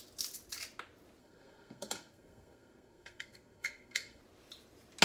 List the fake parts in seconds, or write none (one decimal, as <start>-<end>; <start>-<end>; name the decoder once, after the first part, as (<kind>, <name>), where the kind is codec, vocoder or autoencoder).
1.2-4.2 (codec, SNAC)